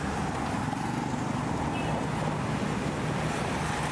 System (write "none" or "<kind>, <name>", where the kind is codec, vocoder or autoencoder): none